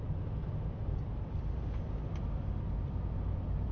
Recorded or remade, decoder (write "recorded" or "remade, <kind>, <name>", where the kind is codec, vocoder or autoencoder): recorded